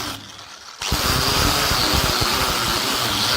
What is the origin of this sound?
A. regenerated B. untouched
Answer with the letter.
B